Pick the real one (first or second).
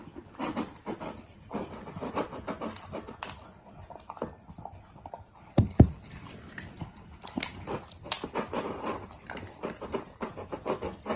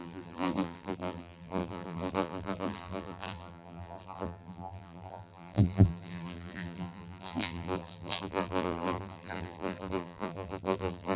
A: first